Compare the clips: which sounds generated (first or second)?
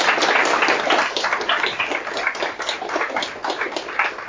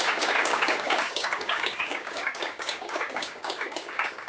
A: second